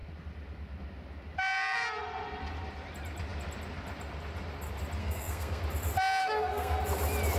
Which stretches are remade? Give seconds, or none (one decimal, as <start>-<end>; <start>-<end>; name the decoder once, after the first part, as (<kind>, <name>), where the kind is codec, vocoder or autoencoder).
5.0-5.6 (codec, SNAC); 6.2-6.8